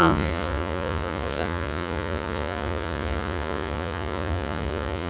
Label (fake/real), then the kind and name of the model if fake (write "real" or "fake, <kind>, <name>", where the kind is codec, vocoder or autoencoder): fake, vocoder, Vocos